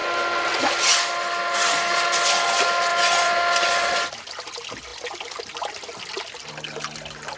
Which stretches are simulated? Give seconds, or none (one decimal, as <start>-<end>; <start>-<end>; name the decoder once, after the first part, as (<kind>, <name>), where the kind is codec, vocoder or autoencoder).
none